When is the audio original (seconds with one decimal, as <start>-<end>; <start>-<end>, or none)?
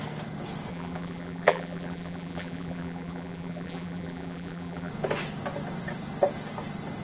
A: 0.0-0.7; 4.9-7.0